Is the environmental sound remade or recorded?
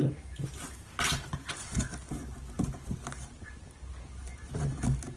recorded